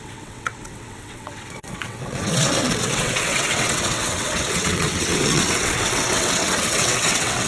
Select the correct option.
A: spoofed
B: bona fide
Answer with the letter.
A